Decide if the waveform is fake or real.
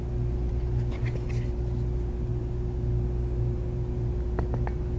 real